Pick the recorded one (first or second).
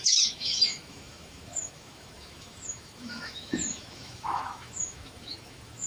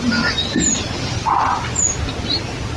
second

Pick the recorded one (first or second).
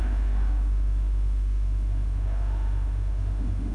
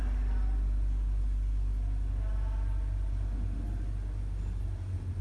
second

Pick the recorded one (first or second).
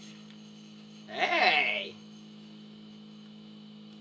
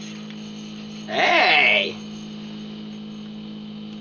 second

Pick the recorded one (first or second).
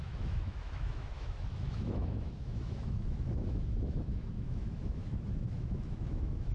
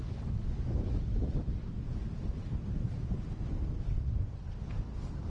second